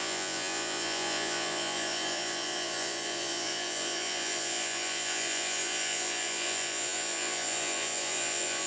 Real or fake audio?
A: fake